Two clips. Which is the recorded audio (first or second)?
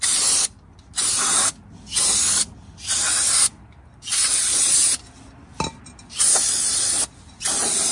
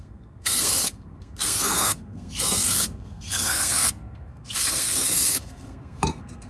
first